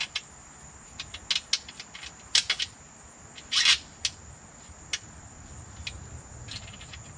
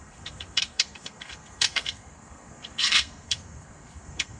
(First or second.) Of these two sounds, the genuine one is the first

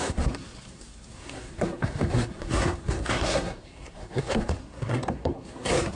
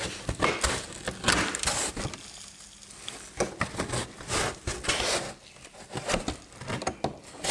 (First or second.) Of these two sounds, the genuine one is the second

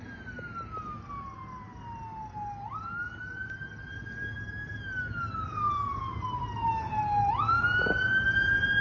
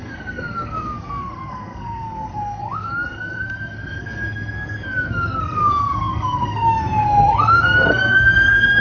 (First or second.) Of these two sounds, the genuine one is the first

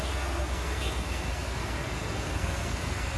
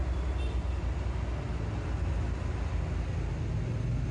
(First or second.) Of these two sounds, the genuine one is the second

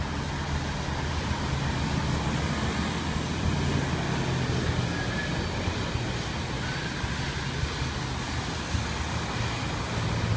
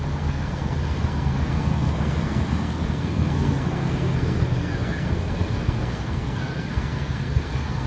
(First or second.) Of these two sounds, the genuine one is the first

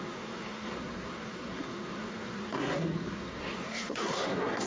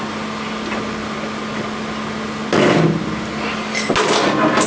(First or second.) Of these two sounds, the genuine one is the second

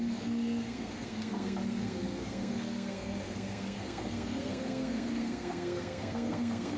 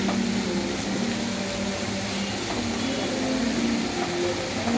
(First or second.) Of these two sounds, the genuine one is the second